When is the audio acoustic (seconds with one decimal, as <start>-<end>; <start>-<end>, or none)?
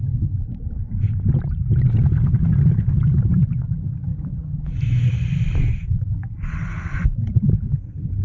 0.0-8.2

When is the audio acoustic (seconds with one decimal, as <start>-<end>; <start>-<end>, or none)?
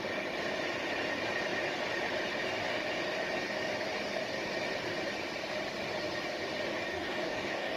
0.0-6.9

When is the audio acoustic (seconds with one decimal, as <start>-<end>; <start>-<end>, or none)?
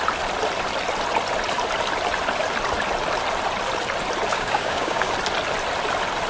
0.0-4.3; 5.1-6.3